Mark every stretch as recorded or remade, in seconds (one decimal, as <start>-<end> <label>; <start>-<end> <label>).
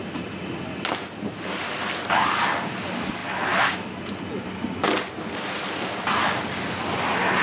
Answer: 0.0-7.4 recorded